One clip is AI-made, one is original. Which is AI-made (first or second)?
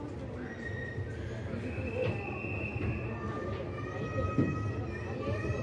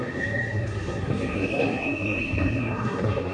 second